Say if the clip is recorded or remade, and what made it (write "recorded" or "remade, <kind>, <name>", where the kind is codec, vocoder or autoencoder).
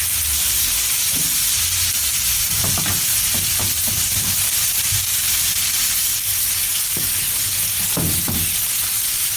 remade, vocoder, BigVGAN v2